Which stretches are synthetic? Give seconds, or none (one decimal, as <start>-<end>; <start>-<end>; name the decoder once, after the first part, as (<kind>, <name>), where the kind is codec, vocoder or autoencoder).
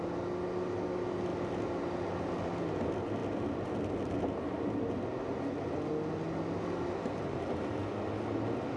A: none